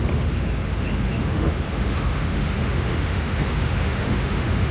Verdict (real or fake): fake